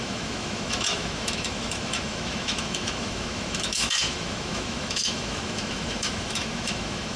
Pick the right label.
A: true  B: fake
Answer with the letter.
B